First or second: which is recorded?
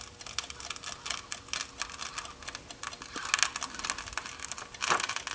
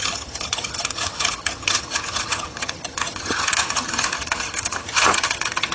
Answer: first